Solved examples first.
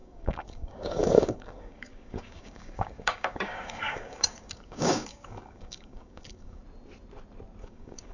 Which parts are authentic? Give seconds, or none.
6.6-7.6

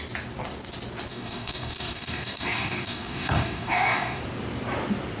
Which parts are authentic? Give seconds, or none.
0.0-1.1; 4.2-5.2

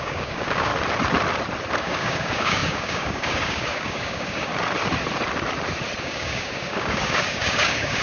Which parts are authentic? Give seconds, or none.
0.7-1.8; 4.5-6.0

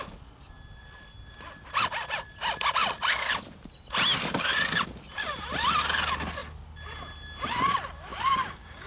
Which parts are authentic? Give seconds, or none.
0.0-8.1

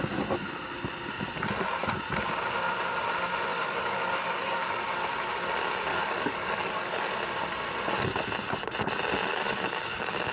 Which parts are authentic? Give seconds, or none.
0.0-3.5; 4.8-5.9; 7.1-9.3

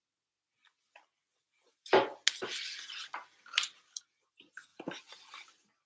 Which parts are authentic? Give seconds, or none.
0.0-5.9

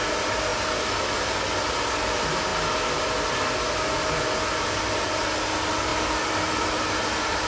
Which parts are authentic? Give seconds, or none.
0.0-7.5

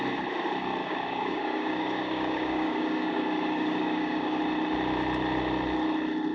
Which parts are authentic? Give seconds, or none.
0.0-0.8; 4.4-6.3